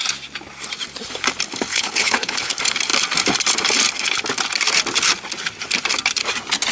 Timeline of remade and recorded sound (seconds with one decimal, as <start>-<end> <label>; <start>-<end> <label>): 0.0-1.7 recorded; 1.7-2.5 remade; 2.5-6.7 recorded